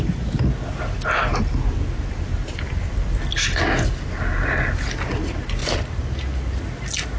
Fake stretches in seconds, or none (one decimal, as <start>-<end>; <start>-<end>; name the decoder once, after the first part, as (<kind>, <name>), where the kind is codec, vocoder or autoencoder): 1.3-3.2 (vocoder, BigVGAN v2)